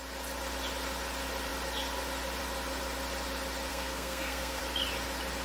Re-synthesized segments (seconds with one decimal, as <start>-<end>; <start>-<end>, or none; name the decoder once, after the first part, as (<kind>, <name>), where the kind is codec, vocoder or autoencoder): 3.7-4.6 (codec, SNAC)